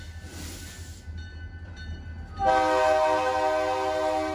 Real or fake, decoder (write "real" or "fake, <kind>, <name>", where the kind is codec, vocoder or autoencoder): real